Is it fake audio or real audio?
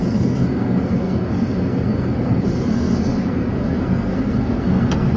fake